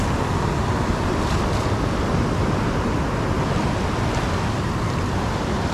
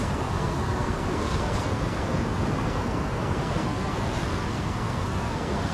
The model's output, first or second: second